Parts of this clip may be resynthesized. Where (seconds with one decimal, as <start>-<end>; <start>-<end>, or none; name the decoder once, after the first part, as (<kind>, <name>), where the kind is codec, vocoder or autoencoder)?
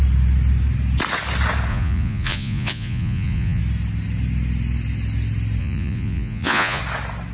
1.7-3.6 (vocoder, Vocos); 5.6-6.8